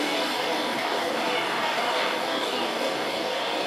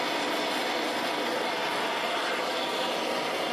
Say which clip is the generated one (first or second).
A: first